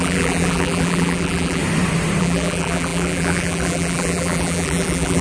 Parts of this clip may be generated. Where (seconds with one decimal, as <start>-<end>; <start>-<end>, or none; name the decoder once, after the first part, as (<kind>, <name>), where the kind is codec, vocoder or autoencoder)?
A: 0.0-1.6 (vocoder, BigVGAN v2); 2.2-5.2

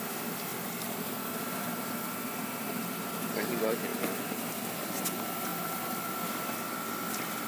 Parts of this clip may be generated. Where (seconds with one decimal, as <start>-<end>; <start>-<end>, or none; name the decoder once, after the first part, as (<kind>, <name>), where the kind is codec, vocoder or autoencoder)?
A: 3.9-5.0 (vocoder, BigVGAN v2)

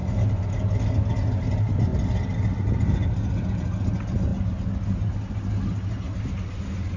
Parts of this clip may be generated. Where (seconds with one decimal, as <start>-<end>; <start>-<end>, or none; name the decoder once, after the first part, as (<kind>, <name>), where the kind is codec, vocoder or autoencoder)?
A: 0.0-0.5 (vocoder, BigVGAN v2)

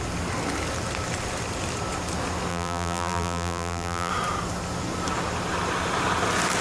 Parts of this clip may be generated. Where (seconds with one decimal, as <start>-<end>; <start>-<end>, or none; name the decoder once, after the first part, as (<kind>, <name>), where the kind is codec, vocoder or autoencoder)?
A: 2.5-4.1 (vocoder, BigVGAN v2)

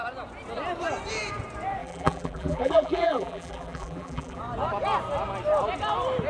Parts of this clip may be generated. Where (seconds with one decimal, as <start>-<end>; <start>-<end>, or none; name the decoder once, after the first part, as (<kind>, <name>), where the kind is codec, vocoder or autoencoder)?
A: 1.8-4.4 (vocoder, BigVGAN v2)

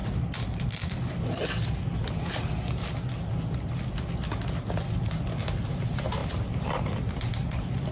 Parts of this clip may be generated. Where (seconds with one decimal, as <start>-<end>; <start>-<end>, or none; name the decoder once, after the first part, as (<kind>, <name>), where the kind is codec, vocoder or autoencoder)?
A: 0.0-1.3 (vocoder, BigVGAN v2); 6.2-7.9

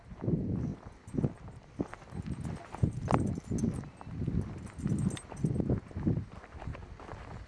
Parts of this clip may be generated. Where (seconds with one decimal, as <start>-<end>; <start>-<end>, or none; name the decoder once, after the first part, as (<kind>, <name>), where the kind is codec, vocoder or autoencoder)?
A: 6.7-7.5 (vocoder, BigVGAN v2)

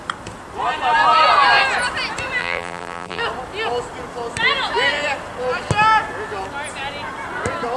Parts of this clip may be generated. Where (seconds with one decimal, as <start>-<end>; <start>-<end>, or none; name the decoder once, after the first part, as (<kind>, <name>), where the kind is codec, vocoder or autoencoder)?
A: 2.4-3.2 (vocoder, BigVGAN v2)